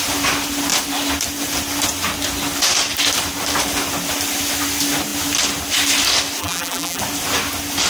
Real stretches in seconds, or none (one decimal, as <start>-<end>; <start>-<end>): 0.0-6.4; 7.0-7.9